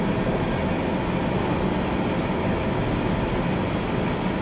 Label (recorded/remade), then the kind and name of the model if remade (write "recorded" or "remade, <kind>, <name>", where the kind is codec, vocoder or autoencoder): recorded